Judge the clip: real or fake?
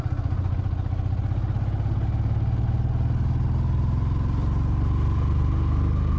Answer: real